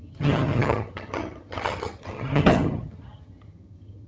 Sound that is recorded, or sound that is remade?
remade